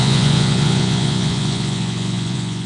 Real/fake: fake